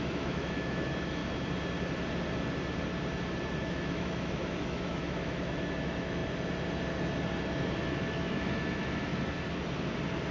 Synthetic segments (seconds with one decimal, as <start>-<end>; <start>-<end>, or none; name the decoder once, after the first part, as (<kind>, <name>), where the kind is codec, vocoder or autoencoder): 0.0-1.2 (autoencoder, DAC-VAE); 3.6-6.2; 7.8-9.1

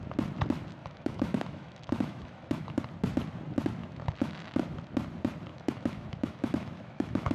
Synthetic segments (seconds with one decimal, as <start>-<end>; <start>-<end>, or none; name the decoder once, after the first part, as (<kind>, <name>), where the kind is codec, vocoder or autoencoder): 0.8-2.8 (autoencoder, DAC-VAE); 3.8-4.5; 5.5-7.3

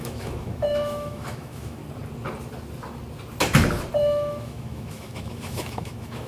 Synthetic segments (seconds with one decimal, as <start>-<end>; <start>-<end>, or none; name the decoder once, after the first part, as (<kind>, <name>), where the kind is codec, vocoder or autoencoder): 0.0-1.8 (autoencoder, DAC-VAE); 4.0-6.3

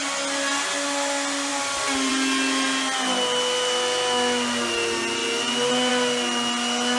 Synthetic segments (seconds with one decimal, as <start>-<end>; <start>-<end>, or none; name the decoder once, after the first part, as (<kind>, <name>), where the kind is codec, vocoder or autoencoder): none

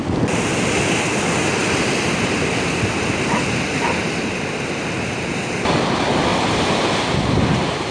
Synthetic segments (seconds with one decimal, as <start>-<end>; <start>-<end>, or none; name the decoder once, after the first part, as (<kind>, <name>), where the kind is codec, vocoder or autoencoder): none

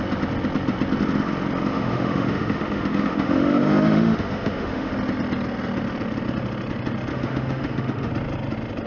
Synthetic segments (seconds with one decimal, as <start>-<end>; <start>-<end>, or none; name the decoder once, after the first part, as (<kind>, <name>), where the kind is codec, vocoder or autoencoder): 1.7-4.9 (autoencoder, DAC-VAE); 7.1-8.1